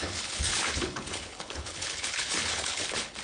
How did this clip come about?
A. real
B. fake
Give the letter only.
B